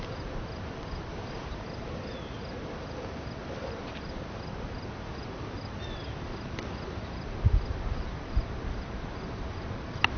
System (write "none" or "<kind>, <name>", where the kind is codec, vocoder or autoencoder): none